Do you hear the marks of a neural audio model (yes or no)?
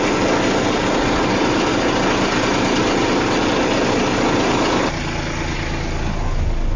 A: no